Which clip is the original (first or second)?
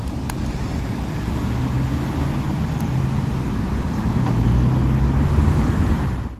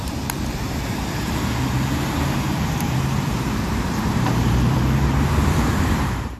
first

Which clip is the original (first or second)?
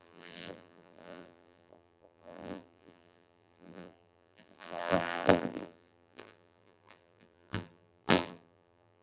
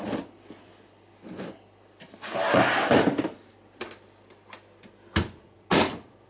second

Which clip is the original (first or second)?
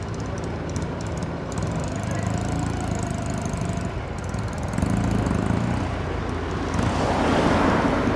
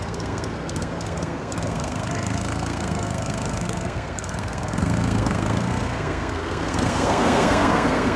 first